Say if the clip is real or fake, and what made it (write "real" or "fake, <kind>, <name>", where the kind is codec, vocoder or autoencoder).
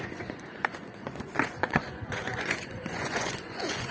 fake, vocoder, Vocos